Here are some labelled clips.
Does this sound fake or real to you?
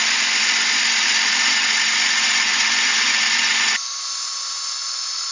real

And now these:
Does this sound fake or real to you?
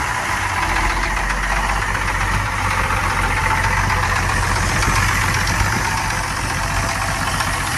real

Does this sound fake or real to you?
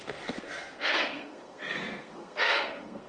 fake